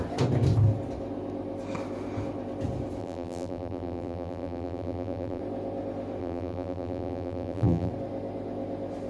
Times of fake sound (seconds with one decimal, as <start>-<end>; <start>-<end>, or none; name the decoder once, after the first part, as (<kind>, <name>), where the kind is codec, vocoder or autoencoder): 3.0-5.4 (vocoder, BigVGAN v2); 6.2-7.9